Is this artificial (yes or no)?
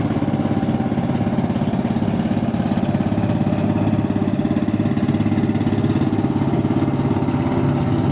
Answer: no